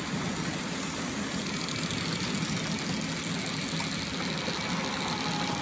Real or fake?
real